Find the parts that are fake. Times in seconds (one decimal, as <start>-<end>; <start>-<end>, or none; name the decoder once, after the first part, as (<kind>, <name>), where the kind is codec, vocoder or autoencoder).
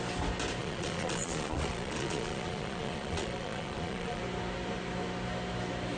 0.6-4.2 (vocoder, Vocos)